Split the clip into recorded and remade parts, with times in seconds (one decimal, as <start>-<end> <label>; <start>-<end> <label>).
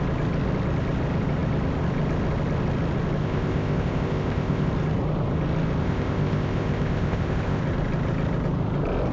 0.0-3.2 recorded; 3.2-4.7 remade; 4.7-5.8 recorded; 5.8-7.6 remade; 7.6-9.1 recorded